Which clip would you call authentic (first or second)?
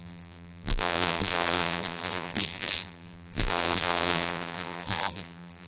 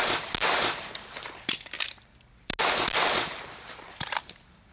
second